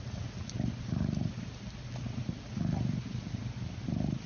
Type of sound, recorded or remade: recorded